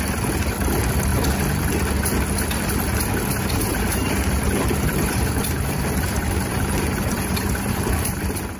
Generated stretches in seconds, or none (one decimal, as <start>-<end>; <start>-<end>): 3.7-8.2